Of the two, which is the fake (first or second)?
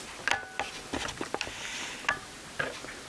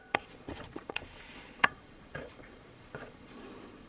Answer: second